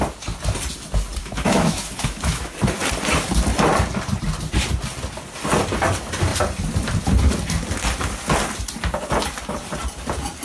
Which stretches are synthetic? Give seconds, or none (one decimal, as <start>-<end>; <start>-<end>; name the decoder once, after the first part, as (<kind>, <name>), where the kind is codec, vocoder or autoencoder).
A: 1.2-2.6 (autoencoder, DAC-VAE)